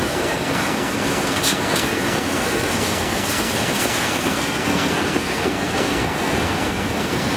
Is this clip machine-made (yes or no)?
yes